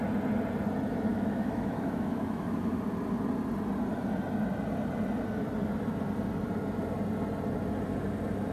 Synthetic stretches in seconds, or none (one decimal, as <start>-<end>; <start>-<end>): 1.1-2.8